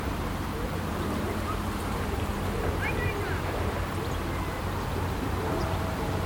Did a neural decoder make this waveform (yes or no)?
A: yes